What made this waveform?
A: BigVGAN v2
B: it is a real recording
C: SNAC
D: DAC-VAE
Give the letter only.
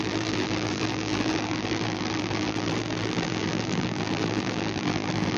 A